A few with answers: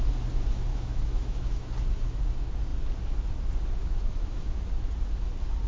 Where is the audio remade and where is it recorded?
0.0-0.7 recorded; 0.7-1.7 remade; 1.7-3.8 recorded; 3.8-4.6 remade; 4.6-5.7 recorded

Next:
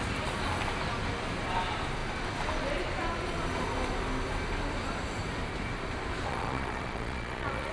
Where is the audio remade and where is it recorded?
0.0-6.3 recorded; 6.3-7.7 remade